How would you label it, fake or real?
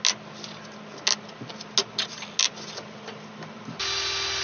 real